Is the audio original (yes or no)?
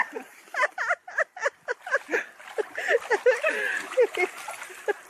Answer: yes